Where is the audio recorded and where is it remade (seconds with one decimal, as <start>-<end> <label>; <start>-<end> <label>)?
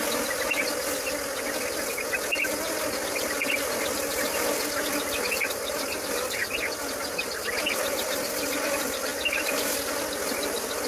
0.0-10.9 recorded